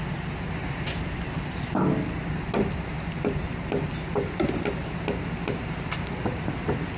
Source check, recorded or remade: recorded